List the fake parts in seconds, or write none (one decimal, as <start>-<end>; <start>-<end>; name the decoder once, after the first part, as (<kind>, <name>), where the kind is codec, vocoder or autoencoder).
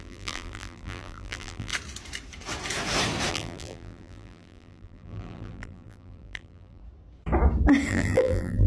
0.0-1.7 (vocoder, BigVGAN v2); 3.3-6.8; 7.9-8.7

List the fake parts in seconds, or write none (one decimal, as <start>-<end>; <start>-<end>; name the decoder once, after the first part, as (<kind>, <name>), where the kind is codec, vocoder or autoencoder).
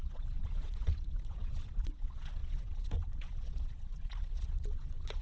0.0-5.2 (vocoder, Vocos)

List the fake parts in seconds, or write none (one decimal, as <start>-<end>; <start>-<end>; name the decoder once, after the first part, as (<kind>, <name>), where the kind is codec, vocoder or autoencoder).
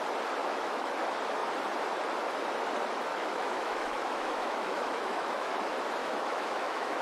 0.4-0.9 (autoencoder, DAC-VAE); 3.1-5.5; 6.0-7.0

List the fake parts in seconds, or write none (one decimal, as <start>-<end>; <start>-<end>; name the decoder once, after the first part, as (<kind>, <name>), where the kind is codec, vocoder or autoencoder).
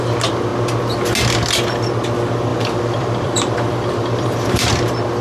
2.5-4.7 (vocoder, BigVGAN v2)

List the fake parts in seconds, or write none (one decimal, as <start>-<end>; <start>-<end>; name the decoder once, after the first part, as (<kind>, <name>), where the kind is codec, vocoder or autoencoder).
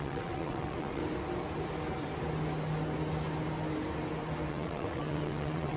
0.0-1.0 (vocoder, WaveNeXt); 4.5-5.8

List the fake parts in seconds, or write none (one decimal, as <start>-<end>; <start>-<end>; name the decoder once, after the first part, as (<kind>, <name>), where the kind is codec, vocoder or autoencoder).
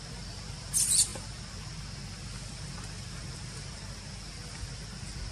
none